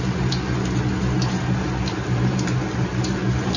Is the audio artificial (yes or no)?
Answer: no